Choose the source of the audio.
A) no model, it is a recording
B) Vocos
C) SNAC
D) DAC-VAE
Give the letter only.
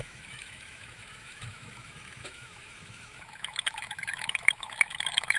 D